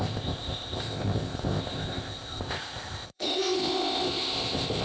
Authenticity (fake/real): fake